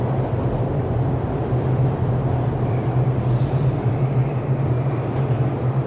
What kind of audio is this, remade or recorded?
remade